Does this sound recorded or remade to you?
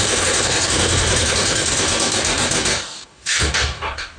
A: remade